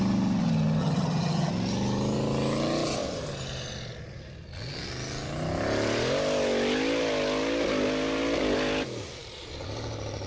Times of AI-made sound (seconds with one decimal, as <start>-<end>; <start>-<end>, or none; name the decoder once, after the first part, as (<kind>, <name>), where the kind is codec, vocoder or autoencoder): 0.8-1.5 (vocoder, HiFi-GAN)